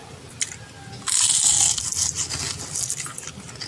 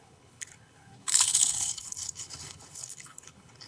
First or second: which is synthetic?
second